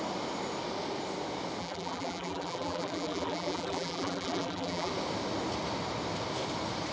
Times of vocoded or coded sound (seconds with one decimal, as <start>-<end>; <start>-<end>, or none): 1.6-4.9